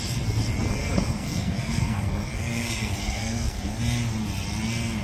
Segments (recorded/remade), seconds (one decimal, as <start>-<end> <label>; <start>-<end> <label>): 0.0-0.8 recorded; 0.8-3.8 remade; 3.8-5.0 recorded